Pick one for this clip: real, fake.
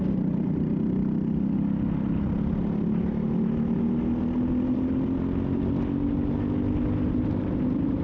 real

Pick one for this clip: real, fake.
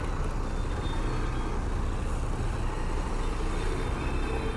real